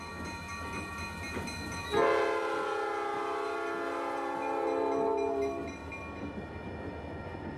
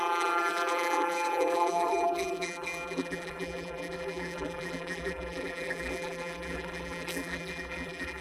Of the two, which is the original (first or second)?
first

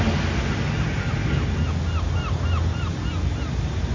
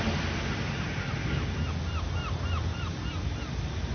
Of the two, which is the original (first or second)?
first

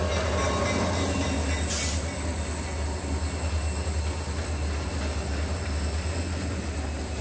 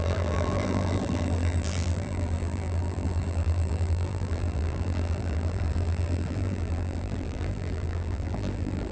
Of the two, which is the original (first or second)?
first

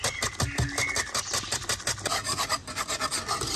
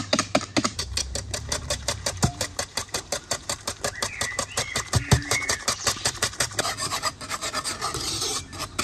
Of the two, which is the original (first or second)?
first